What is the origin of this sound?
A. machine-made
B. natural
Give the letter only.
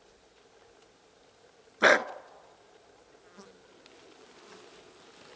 B